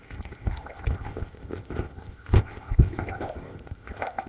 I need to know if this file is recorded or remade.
remade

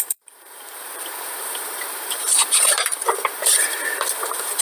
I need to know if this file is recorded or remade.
remade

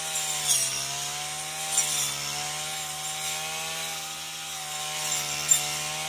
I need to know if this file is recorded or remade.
recorded